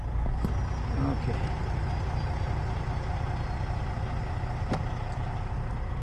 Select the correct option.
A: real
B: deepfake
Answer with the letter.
A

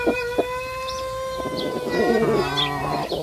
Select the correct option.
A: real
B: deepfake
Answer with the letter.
A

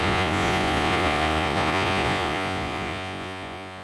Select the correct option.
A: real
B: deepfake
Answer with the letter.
B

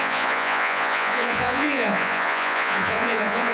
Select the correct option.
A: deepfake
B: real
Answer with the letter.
A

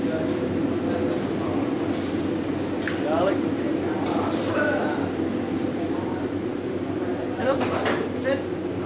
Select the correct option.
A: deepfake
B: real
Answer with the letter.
B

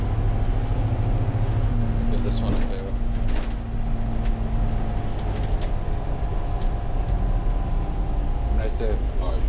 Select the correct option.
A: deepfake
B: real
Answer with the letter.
B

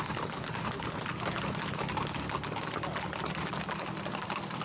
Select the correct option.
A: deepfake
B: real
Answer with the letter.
B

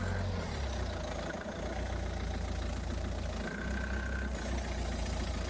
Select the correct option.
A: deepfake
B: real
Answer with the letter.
B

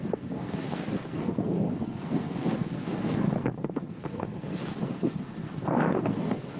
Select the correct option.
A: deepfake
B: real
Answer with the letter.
A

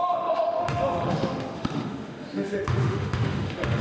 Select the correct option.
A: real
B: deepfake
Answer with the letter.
B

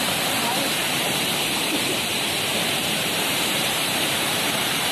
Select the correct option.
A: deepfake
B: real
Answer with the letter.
A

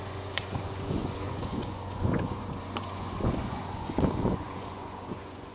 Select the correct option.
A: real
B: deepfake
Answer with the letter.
B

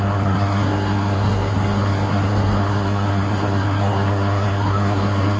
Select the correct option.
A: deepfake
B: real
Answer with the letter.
A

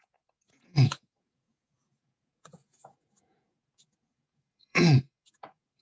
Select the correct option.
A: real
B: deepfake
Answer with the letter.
B